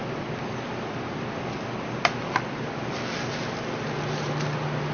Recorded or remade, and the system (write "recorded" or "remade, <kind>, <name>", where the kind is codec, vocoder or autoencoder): recorded